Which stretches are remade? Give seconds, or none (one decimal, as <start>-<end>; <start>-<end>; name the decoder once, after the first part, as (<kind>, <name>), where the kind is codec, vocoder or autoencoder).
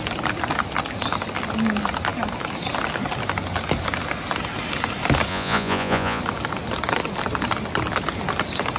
5.3-6.2 (vocoder, Vocos)